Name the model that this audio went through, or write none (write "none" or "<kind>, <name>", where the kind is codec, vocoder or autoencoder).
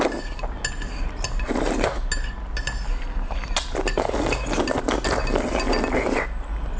none